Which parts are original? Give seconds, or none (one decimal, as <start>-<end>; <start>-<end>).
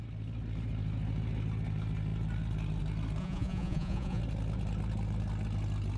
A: 0.0-3.2; 4.2-6.0